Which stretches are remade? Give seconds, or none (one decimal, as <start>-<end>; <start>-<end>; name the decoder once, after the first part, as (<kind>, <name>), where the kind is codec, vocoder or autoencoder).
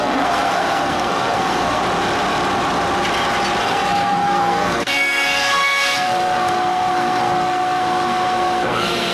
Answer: 0.0-1.8 (codec, SNAC); 3.6-9.1